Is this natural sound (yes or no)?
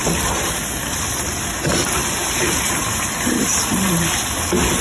no